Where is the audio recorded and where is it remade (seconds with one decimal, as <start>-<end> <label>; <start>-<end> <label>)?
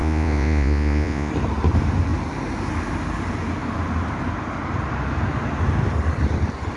0.0-1.3 remade; 1.3-6.8 recorded